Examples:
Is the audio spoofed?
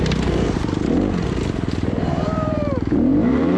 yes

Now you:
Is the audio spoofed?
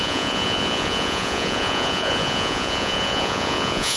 yes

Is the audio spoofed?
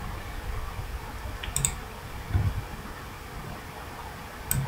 no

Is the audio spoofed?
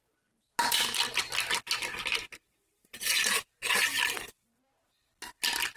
no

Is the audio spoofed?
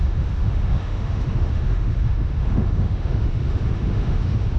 yes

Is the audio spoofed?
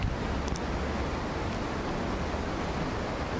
no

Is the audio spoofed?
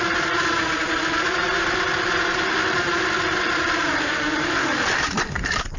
yes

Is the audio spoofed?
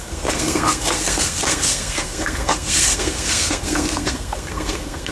yes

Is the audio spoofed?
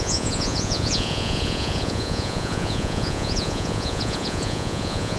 yes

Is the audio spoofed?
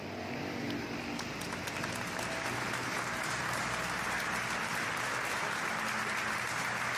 no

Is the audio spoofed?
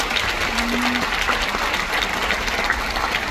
no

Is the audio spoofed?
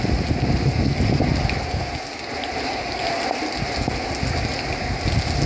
no